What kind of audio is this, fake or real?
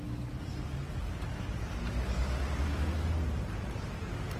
real